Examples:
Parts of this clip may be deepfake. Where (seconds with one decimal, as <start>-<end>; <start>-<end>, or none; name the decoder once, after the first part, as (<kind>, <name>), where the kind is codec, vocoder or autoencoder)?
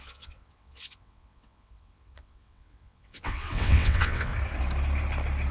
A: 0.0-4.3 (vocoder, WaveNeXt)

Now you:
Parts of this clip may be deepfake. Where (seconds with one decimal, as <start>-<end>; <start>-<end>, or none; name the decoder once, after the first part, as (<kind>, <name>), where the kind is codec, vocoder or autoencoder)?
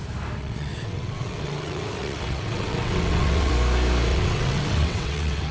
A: 0.4-3.5 (vocoder, WaveNeXt); 4.1-5.5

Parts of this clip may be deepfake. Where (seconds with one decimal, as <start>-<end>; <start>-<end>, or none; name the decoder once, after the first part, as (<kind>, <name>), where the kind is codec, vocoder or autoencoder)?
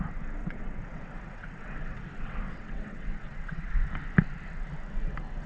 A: 0.4-3.7 (vocoder, WaveNeXt)